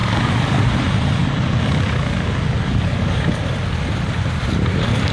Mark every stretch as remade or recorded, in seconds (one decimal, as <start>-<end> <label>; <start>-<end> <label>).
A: 0.0-0.6 remade; 0.6-1.2 recorded; 1.2-3.4 remade; 3.4-5.1 recorded